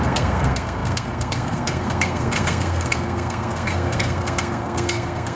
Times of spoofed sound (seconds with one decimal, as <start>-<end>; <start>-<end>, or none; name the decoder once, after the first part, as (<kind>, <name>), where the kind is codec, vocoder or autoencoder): 0.0-5.4 (codec, SNAC)